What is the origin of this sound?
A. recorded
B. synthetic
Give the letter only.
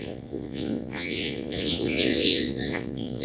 B